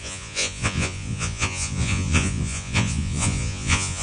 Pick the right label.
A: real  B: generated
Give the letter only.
B